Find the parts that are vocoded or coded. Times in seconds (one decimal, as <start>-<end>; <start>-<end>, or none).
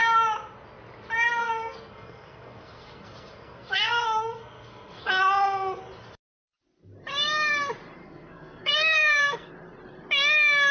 1.4-5.2; 8.0-9.5